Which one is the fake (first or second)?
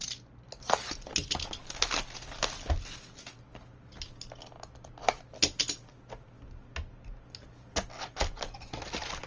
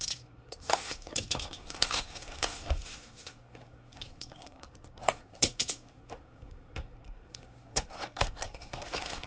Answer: second